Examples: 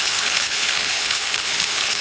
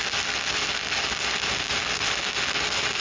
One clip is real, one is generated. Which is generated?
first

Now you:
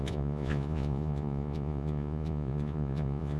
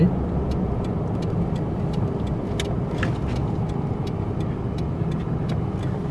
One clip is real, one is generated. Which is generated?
first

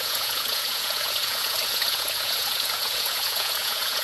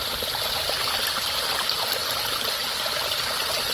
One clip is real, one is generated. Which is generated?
first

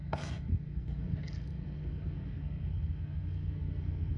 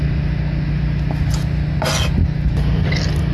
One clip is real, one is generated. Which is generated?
first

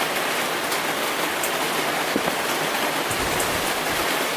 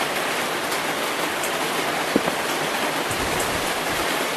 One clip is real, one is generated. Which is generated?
second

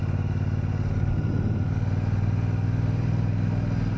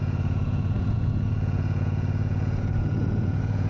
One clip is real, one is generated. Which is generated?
second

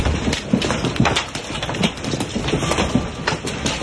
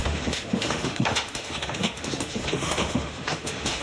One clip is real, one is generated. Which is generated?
second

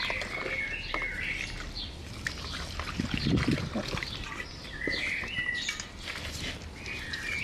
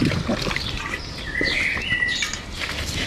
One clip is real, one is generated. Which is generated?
second